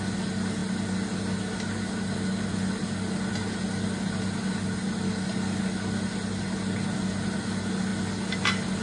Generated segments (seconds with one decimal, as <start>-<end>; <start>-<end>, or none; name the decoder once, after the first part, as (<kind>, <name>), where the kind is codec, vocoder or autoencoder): none